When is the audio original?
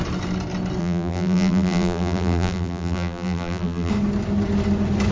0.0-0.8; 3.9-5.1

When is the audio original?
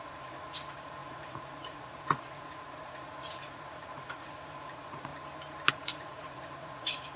5.1-5.7